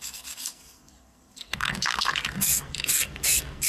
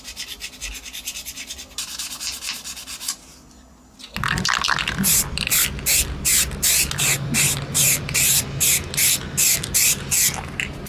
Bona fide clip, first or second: second